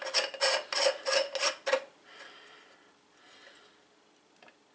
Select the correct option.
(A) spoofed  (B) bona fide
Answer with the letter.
B